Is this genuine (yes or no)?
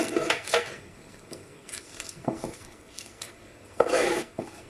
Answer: no